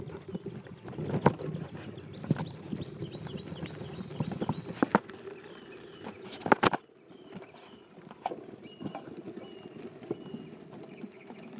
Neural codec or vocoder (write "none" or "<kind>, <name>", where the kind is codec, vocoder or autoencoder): none